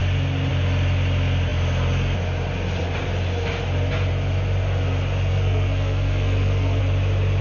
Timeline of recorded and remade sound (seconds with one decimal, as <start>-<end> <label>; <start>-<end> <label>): 0.0-5.3 recorded; 5.3-6.8 remade; 6.8-7.4 recorded